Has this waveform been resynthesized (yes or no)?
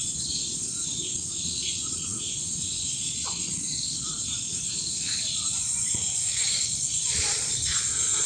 yes